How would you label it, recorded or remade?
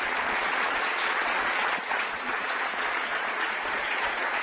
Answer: remade